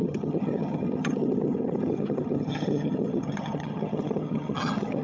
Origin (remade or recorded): remade